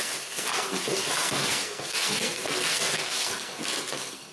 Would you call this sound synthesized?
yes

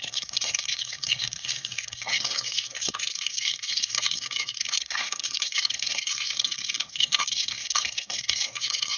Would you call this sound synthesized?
yes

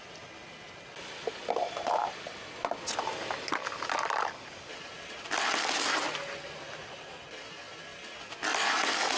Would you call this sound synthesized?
no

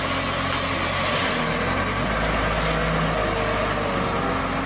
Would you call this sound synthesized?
no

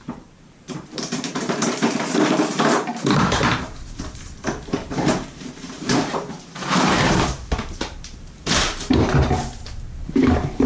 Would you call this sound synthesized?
yes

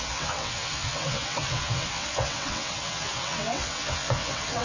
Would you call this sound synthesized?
yes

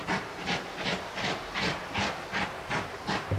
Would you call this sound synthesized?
no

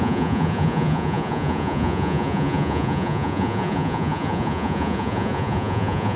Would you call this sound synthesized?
yes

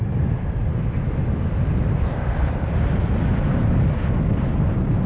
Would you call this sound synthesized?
no